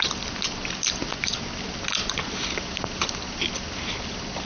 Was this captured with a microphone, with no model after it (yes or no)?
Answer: yes